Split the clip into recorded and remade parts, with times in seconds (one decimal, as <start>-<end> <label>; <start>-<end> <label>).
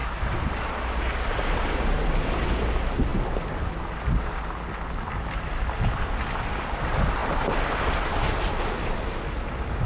0.0-9.9 recorded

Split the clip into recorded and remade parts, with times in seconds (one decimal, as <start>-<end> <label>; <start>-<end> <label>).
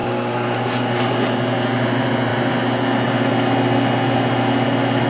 0.0-1.1 remade; 1.1-5.1 recorded